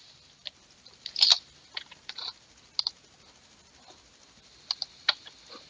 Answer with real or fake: real